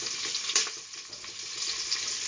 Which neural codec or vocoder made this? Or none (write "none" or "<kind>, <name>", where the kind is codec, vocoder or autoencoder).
none